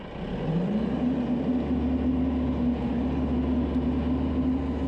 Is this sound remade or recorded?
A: recorded